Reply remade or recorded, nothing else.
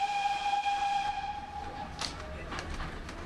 recorded